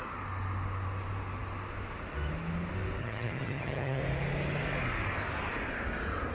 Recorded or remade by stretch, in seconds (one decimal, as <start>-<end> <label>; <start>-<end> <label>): 0.0-3.0 recorded; 3.0-4.0 remade; 4.0-6.3 recorded